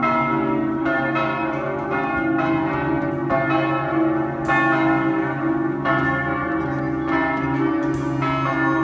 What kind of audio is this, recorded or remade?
recorded